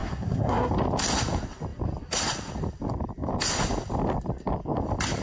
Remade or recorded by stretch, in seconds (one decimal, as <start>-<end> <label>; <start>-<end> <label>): 0.0-0.7 remade; 0.7-5.2 recorded